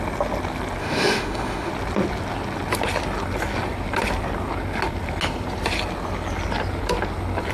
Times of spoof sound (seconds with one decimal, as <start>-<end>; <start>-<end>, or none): 0.8-1.7